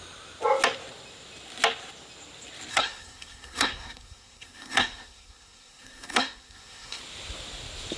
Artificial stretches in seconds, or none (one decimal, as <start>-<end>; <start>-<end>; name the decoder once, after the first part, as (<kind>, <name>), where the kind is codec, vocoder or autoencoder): 2.7-7.0 (codec, SNAC)